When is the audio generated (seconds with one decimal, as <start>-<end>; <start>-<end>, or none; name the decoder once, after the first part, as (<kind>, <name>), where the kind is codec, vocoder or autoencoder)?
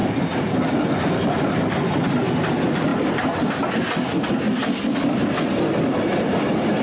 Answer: none